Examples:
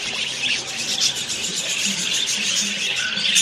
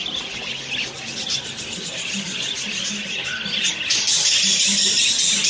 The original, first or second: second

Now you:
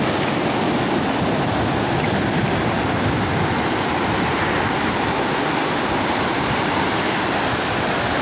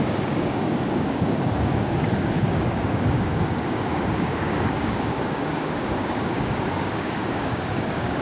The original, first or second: first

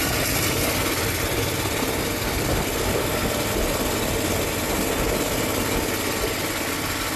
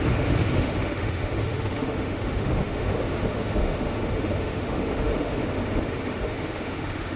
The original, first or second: first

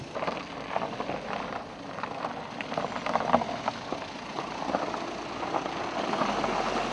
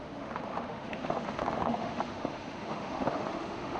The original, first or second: first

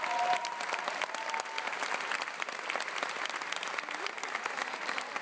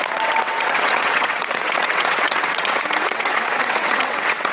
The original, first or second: first